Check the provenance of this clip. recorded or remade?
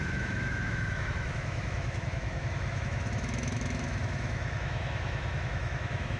remade